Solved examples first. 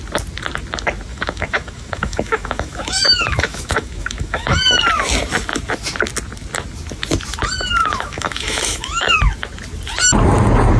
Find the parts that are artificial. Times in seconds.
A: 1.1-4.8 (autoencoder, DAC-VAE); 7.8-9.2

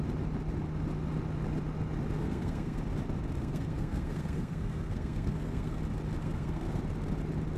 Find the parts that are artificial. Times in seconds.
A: 2.2-2.8 (codec, SNAC); 3.4-5.8; 6.2-6.8

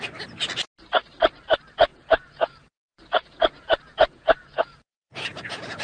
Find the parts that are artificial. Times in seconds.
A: 1.9-5.8 (vocoder, Vocos)